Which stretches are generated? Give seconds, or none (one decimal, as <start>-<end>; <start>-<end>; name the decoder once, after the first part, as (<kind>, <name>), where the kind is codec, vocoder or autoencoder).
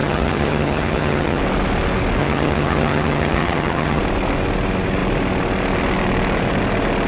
0.0-1.4 (vocoder, HiFi-GAN); 2.2-4.0